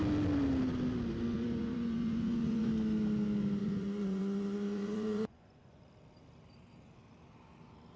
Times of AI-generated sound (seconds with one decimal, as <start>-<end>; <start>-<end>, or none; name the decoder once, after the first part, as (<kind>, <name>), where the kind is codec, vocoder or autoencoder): 1.3-2.7 (vocoder, Vocos); 3.6-5.8